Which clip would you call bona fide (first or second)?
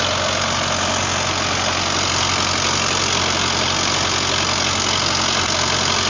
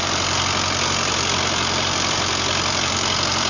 first